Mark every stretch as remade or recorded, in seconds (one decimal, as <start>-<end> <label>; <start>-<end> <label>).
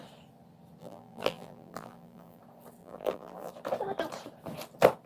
0.0-0.8 recorded; 0.8-2.4 remade; 2.4-2.8 recorded; 2.8-3.5 remade; 3.5-5.1 recorded